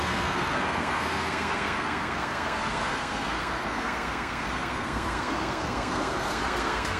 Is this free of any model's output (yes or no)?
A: no